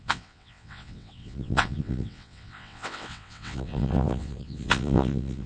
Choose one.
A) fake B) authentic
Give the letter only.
A